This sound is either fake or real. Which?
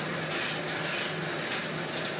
real